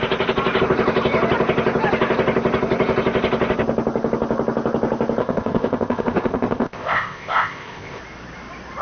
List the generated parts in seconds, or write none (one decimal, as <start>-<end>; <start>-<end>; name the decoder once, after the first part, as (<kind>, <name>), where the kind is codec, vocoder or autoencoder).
5.2-8.0 (codec, ZipCodec)

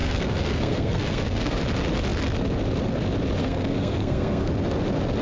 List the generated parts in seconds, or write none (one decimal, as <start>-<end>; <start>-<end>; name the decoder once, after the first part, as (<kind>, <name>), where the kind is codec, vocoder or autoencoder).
0.0-1.6 (codec, SNAC); 3.4-4.5

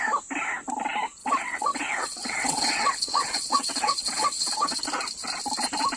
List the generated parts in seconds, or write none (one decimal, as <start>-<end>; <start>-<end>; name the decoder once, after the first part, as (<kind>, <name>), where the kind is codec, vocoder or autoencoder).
1.2-4.8 (vocoder, WaveNeXt)